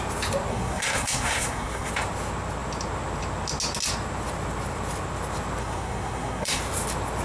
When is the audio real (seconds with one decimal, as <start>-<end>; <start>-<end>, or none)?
0.0-0.5; 1.9-5.6; 6.6-7.2